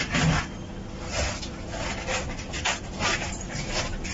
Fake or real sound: real